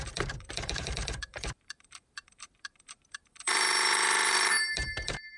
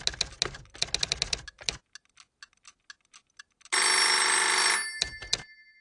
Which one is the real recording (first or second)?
second